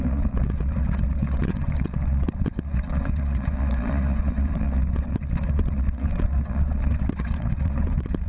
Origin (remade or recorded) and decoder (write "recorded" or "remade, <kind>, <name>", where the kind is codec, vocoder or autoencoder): remade, vocoder, WaveNeXt